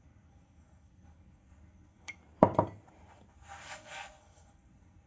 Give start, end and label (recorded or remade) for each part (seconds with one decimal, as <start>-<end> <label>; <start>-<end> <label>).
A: 0.0-2.2 remade; 2.2-3.3 recorded; 3.3-5.1 remade